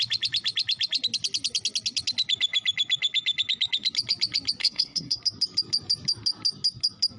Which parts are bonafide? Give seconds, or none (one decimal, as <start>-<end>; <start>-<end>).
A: 0.0-4.6; 5.2-7.2

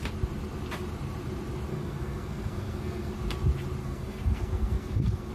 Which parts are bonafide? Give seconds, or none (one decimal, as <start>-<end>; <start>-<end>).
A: 0.0-1.7; 3.1-3.8